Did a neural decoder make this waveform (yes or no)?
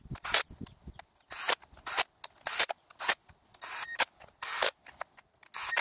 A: no